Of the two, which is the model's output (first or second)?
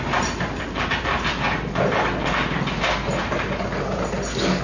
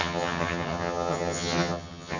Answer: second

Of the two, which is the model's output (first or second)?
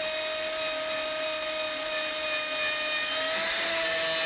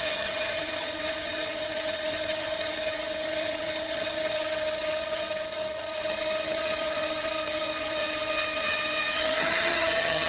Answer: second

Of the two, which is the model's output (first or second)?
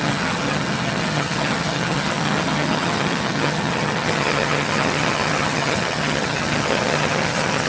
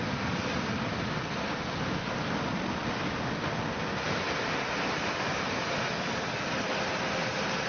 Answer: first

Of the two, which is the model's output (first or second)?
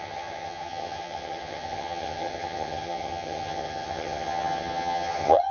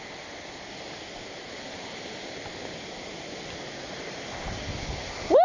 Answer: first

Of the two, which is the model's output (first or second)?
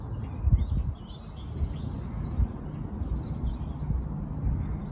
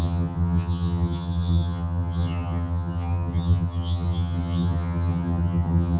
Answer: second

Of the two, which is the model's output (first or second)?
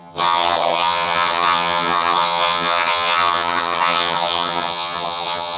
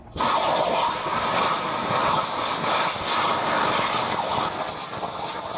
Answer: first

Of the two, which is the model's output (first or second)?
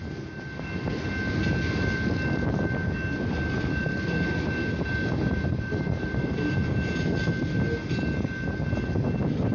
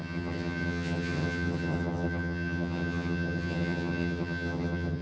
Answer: second